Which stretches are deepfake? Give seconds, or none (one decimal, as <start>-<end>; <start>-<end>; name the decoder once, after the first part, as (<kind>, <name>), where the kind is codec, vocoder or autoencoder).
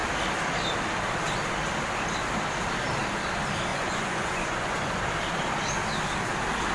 3.7-5.0 (vocoder, Vocos)